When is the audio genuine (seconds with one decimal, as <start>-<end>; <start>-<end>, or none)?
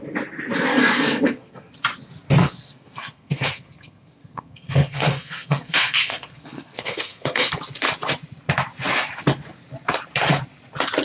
0.0-0.7; 1.7-2.4; 7.5-11.0